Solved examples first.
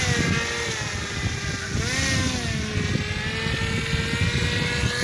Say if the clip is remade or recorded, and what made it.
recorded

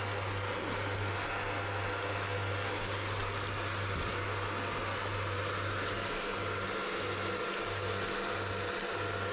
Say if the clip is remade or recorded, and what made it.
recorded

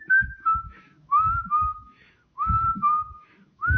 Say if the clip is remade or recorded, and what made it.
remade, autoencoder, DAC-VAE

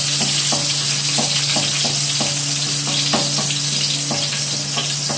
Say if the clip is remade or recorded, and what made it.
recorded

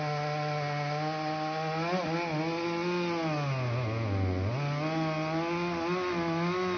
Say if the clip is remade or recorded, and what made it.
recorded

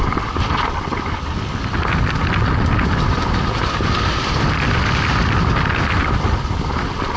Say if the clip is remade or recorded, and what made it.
recorded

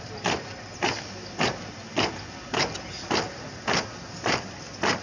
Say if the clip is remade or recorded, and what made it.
recorded